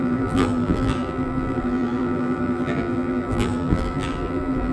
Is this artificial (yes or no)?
yes